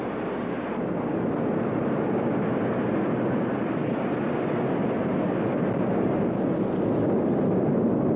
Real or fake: real